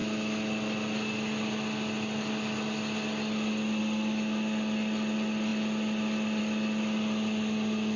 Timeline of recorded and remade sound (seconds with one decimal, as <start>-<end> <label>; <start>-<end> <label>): 0.0-8.0 recorded